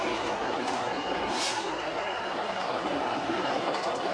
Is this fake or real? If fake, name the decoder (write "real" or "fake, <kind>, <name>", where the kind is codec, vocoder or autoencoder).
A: fake, codec, SNAC